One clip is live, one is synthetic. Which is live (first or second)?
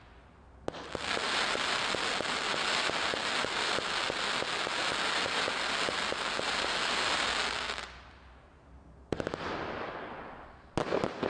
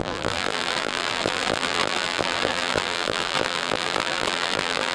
first